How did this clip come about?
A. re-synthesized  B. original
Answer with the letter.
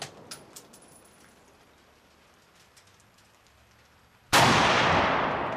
B